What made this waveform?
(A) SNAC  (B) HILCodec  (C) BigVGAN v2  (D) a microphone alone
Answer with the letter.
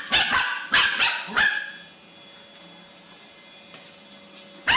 D